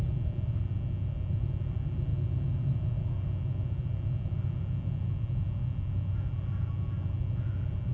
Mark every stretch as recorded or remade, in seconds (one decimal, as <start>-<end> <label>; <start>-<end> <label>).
0.0-7.9 recorded